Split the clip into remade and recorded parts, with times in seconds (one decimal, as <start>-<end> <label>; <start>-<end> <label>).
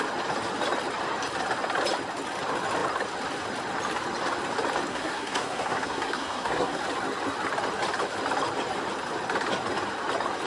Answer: 0.0-4.9 recorded; 4.9-6.8 remade; 6.8-10.5 recorded